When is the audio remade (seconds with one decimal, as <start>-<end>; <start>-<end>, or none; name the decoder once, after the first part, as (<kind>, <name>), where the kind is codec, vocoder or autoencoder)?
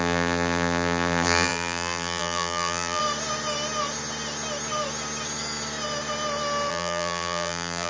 0.0-3.0 (vocoder, BigVGAN v2); 6.7-7.9